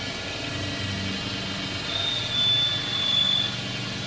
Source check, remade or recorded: recorded